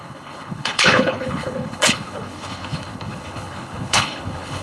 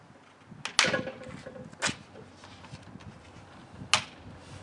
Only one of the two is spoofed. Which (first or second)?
first